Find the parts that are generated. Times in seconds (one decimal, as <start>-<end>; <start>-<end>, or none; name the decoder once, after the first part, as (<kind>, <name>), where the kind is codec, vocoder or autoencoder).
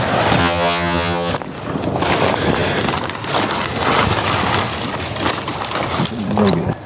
0.4-1.3 (vocoder, HiFi-GAN)